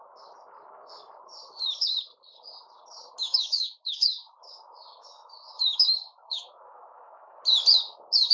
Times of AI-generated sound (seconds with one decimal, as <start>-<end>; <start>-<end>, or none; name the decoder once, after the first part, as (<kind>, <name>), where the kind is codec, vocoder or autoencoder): 3.2-7.4 (autoencoder, DAC-VAE)